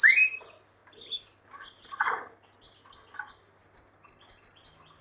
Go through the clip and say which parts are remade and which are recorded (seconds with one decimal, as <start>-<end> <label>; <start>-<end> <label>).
0.0-5.0 recorded